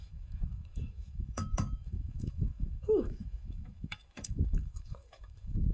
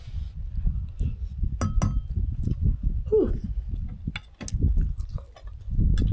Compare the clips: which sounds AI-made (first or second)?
first